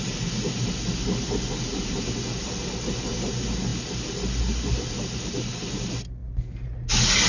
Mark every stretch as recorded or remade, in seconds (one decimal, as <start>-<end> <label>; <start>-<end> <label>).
0.0-7.3 recorded